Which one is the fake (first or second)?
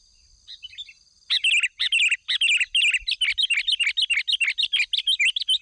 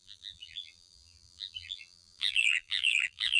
second